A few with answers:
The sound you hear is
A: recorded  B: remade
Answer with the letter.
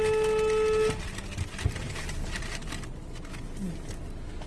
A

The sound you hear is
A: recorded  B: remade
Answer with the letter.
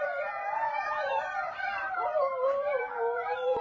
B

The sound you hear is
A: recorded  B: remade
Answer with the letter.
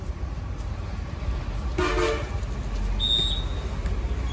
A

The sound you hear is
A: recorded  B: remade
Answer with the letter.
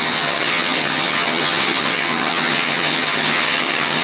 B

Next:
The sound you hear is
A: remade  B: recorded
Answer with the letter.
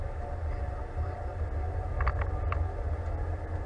B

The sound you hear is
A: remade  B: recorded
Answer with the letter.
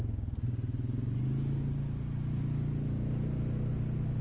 B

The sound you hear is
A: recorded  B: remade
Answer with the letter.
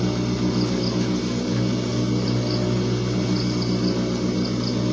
A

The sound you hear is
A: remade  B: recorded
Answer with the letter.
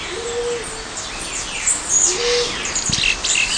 B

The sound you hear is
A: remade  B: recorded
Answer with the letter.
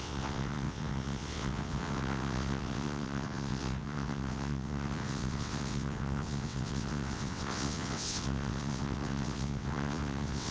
A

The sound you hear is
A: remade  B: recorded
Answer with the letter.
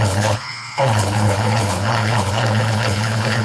A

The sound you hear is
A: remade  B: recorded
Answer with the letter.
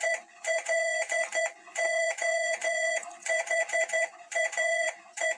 A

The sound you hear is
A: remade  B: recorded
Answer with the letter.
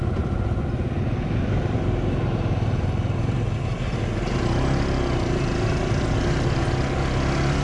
B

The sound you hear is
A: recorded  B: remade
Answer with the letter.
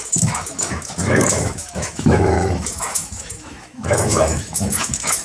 B